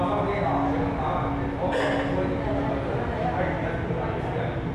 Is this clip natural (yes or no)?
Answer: yes